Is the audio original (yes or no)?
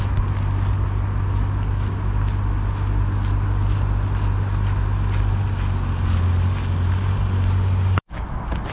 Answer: yes